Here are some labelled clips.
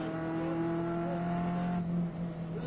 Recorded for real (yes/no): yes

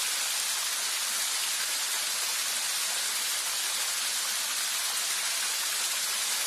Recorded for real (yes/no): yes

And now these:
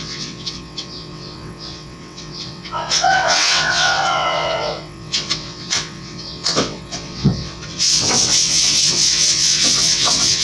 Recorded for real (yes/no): no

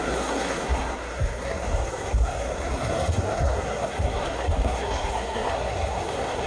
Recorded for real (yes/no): no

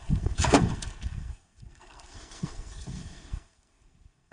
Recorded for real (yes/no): no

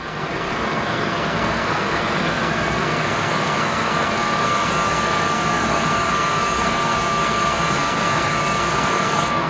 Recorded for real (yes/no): no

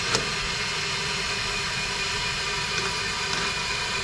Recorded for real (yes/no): yes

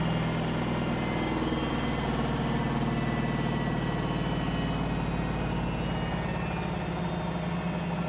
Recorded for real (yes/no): yes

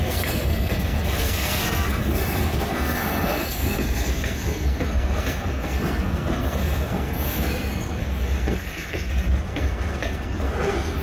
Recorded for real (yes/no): no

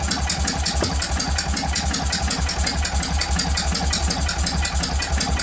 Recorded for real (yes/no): yes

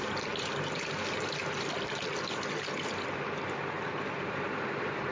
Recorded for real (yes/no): yes